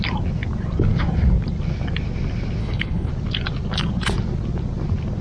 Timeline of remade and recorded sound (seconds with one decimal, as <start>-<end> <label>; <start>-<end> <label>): 0.0-2.6 recorded; 2.6-3.1 remade; 3.1-5.2 recorded